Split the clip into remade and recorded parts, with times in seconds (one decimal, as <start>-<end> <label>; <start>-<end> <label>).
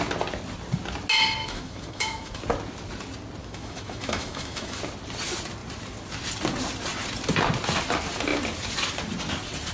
0.0-1.4 recorded; 1.4-2.4 remade; 2.4-3.4 recorded; 3.4-4.8 remade; 4.8-9.7 recorded